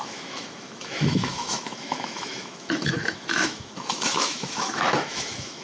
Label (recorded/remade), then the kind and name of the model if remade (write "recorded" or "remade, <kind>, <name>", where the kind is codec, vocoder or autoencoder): remade, autoencoder, DAC-VAE